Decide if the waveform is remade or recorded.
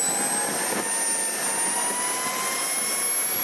recorded